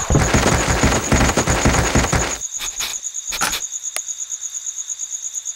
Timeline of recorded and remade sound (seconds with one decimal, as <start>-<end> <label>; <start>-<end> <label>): 0.0-5.6 recorded